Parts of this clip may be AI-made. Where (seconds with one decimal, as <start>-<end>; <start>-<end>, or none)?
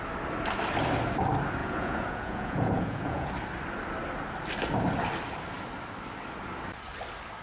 1.6-3.3